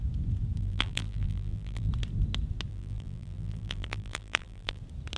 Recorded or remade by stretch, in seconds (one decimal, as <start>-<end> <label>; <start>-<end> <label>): 0.0-0.6 recorded; 0.6-1.9 remade; 1.9-2.7 recorded; 2.7-4.8 remade; 4.8-5.2 recorded